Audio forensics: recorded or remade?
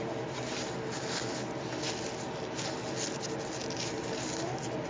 recorded